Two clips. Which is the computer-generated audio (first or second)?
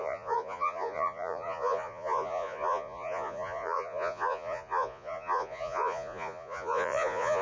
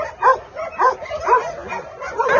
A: first